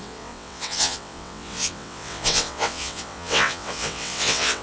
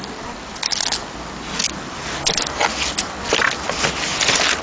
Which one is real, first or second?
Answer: second